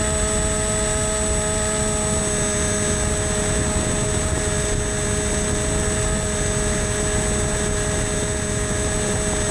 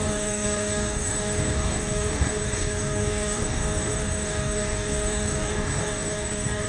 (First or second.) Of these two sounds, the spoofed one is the second